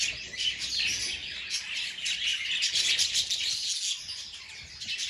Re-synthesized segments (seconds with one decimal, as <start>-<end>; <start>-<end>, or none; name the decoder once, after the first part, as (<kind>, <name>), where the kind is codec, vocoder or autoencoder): none